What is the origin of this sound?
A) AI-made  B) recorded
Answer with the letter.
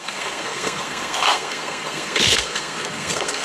A